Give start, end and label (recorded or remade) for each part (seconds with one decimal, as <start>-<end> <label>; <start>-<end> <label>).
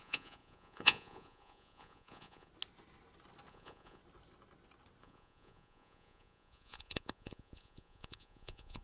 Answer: 0.0-2.5 remade; 2.5-3.5 recorded; 3.5-4.0 remade; 4.0-5.0 recorded; 5.0-8.8 remade